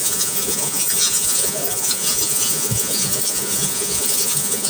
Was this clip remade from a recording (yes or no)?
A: yes